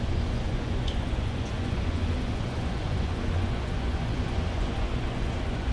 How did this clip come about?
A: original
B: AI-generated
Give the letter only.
B